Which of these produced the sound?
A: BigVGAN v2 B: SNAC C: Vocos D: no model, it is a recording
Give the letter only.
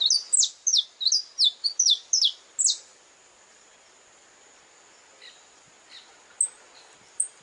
D